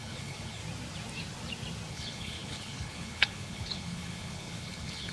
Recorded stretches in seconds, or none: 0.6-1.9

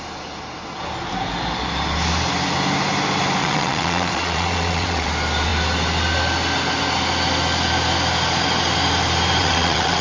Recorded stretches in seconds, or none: 0.0-3.4; 5.1-9.4

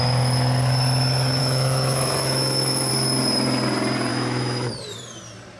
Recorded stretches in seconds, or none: 0.0-1.4; 2.9-4.1; 4.7-5.6

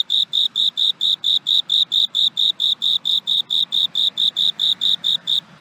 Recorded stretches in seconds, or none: none